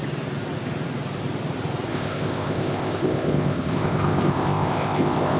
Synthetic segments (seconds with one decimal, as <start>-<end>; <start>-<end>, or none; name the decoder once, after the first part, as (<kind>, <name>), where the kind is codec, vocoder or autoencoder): 1.9-5.4 (codec, ZipCodec)